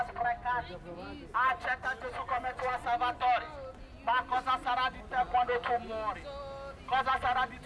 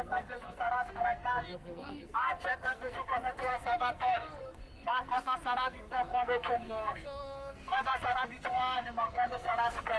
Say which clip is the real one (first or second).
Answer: first